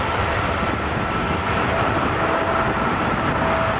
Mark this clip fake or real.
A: real